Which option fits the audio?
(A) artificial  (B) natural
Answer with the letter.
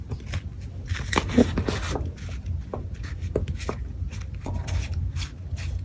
B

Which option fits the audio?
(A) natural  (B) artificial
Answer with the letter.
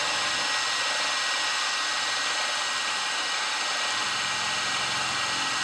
A